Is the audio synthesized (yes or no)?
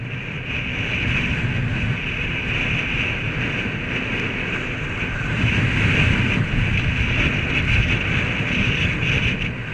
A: no